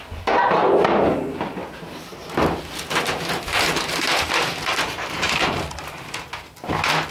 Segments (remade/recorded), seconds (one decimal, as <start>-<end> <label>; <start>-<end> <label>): 0.0-3.5 recorded; 3.5-6.3 remade; 6.3-7.1 recorded